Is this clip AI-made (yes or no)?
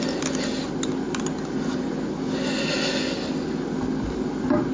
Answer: no